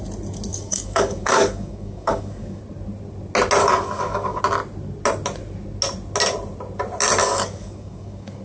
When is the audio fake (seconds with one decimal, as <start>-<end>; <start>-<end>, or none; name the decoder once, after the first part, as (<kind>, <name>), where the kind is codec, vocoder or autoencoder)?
0.5-2.6 (codec, DAC); 3.6-4.4; 7.2-8.4